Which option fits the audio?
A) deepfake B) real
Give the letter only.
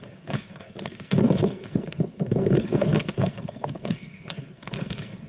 A